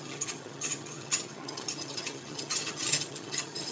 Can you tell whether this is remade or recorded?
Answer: remade